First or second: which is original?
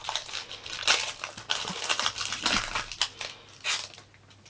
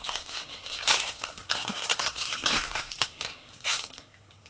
first